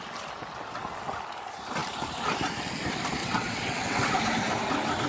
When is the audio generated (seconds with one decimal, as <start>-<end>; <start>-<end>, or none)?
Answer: 3.2-4.1